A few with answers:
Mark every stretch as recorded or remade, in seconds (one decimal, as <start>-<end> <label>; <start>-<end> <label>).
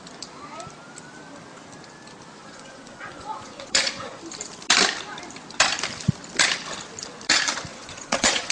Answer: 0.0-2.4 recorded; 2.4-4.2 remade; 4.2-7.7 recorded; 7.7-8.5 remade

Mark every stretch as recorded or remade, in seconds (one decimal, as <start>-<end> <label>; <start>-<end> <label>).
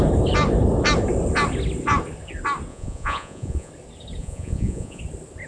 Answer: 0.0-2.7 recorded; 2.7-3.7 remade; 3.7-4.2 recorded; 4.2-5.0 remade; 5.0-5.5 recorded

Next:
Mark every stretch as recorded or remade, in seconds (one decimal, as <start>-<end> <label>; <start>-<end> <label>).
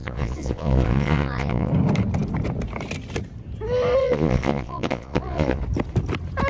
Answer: 0.0-1.7 remade; 1.7-4.0 recorded; 4.0-5.6 remade; 5.6-6.5 recorded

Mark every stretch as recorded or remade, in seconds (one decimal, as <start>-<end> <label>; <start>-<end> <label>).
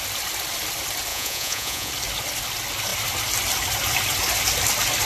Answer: 0.0-1.1 recorded; 1.1-1.9 remade; 1.9-5.0 recorded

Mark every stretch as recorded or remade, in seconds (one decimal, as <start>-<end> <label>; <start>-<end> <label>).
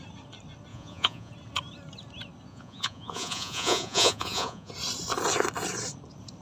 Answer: 0.0-0.7 recorded; 0.7-1.3 remade; 1.3-2.5 recorded; 2.5-4.7 remade; 4.7-6.4 recorded